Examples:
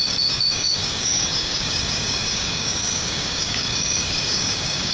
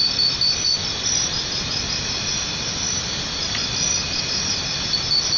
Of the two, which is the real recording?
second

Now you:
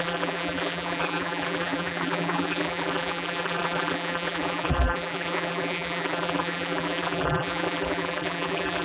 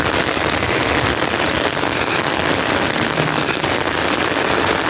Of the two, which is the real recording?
second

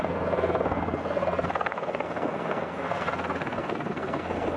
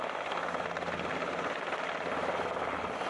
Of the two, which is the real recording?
second